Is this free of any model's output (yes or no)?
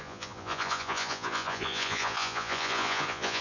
no